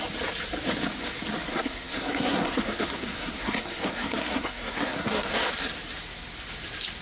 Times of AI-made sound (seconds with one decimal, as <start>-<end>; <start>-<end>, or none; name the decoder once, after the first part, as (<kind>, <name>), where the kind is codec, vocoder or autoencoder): 1.5-5.5 (codec, SNAC)

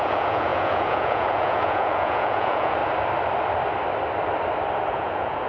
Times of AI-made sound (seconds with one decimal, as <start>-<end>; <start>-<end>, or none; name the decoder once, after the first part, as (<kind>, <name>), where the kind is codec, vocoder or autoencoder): 0.0-2.8 (vocoder, Vocos); 4.9-5.5

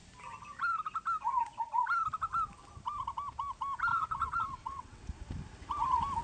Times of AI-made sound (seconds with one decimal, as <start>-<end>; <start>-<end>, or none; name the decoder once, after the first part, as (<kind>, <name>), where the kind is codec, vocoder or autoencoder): 3.9-5.0 (vocoder, WaveNeXt)

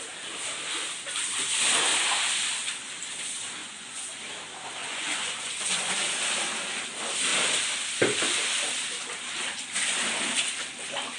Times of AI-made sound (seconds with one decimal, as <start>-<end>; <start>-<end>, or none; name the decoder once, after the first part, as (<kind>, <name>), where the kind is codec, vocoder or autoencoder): 3.6-4.2 (vocoder, Vocos); 4.8-5.9

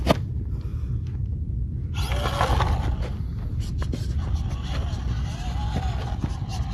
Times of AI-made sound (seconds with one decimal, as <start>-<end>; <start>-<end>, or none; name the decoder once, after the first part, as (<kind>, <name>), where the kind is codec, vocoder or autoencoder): none

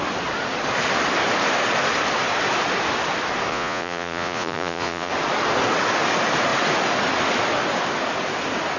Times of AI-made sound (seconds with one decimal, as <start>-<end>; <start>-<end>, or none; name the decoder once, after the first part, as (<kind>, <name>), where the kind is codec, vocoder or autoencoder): 3.5-5.1 (vocoder, Vocos)

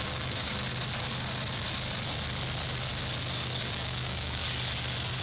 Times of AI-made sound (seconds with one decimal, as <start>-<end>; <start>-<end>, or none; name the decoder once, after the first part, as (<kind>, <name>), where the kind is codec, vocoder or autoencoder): 0.0-0.5 (codec, DAC); 3.6-4.4